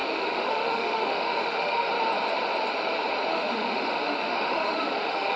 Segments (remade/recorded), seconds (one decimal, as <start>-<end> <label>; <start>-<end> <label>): 0.0-1.9 remade; 1.9-3.3 recorded; 3.3-5.4 remade